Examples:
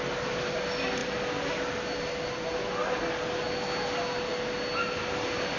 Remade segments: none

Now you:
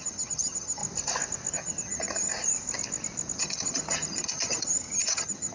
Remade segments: 0.0-0.8 (vocoder, HiFi-GAN); 1.5-2.3; 3.4-5.5

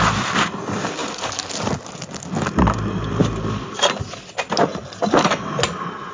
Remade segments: none